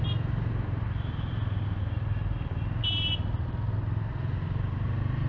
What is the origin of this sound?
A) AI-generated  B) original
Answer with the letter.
B